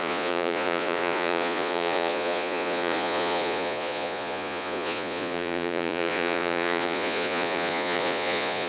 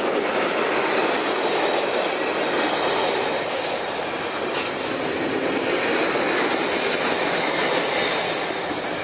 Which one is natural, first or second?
second